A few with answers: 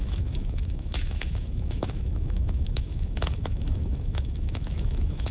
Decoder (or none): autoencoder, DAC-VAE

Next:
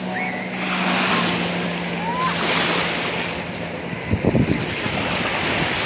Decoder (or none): none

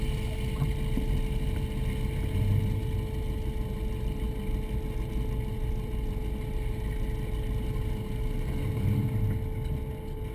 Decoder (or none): none